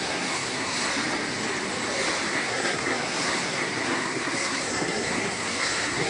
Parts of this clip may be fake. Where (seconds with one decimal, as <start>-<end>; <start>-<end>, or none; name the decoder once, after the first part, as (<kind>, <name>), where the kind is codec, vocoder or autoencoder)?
0.0-0.9 (codec, SNAC); 2.3-6.1